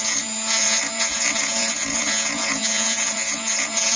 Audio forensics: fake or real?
fake